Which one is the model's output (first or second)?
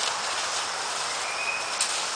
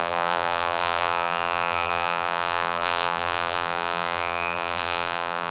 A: second